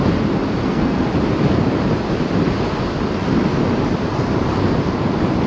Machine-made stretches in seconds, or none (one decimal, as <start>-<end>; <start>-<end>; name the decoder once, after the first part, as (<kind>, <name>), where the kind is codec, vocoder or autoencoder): 0.6-1.1 (codec, SNAC)